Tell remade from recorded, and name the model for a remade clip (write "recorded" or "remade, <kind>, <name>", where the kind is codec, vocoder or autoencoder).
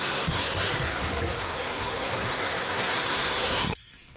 remade, codec, SNAC